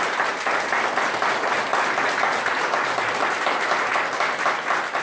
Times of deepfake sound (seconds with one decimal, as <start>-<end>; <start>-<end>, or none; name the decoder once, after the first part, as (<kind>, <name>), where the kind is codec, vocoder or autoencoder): none

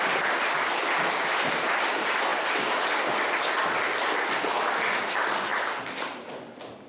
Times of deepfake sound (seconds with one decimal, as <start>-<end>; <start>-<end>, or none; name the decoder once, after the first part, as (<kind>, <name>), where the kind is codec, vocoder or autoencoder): 0.0-2.3 (vocoder, BigVGAN v2); 4.3-5.5